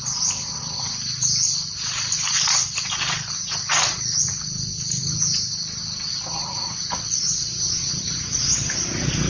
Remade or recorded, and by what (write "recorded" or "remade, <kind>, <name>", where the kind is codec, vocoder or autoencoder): recorded